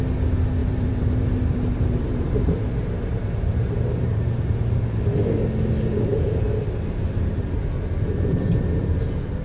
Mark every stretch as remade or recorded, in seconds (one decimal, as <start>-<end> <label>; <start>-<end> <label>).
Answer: 0.0-0.6 recorded; 0.6-4.9 remade; 4.9-9.4 recorded